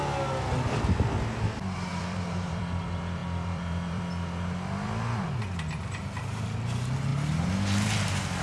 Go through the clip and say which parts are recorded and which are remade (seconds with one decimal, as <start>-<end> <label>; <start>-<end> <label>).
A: 0.0-1.9 recorded; 1.9-2.8 remade; 2.8-3.2 recorded; 3.2-4.0 remade; 4.0-8.4 recorded